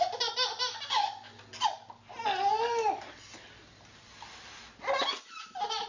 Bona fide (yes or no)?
yes